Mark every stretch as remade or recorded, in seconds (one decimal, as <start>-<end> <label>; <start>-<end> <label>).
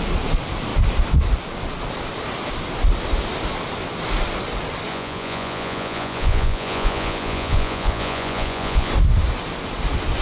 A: 0.0-4.9 recorded; 4.9-8.9 remade; 8.9-10.2 recorded